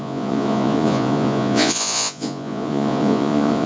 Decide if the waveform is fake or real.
fake